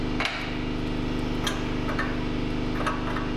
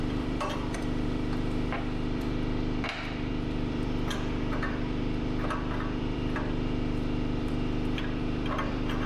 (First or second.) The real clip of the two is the first